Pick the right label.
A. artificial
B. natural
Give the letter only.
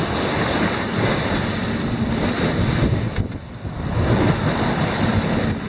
B